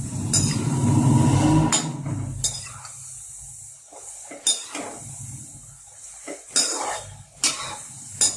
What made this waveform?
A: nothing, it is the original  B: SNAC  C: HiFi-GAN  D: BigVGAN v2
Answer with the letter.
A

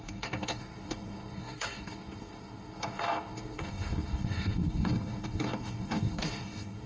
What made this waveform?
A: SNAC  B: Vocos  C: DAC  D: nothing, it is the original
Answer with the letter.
A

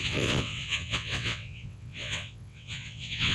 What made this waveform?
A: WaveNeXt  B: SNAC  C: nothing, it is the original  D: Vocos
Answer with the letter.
A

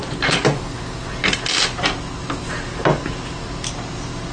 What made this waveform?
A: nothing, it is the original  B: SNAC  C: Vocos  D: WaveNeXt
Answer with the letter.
A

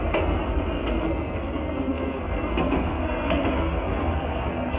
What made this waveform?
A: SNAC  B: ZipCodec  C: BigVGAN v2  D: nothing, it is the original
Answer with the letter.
A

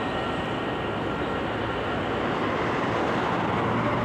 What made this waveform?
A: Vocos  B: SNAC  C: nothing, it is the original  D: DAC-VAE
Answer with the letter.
C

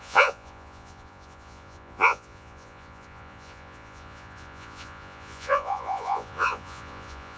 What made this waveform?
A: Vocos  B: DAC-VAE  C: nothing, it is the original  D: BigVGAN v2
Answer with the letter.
A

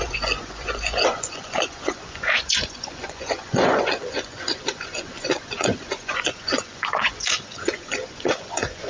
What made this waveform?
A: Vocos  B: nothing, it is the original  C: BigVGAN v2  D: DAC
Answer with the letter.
A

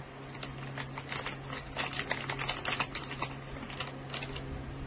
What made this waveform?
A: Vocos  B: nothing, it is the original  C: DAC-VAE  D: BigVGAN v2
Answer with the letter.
B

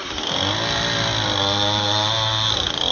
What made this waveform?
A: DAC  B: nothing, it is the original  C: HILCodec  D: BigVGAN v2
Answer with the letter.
B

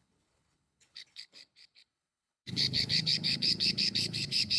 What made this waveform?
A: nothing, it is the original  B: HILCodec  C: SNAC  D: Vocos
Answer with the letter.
B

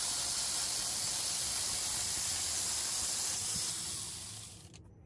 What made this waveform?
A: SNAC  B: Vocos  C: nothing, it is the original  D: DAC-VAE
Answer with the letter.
C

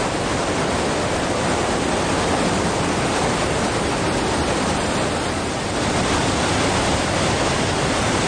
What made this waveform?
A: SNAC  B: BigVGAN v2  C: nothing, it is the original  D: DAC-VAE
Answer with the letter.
C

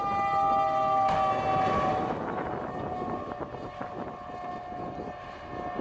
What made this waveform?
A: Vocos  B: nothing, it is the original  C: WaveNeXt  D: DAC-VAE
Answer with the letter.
B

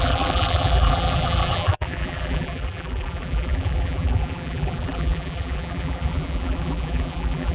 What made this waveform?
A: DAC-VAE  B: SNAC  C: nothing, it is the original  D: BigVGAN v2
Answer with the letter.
D